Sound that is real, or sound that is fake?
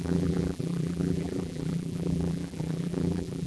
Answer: fake